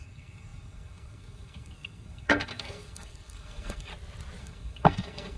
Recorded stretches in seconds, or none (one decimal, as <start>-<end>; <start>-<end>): 3.9-4.4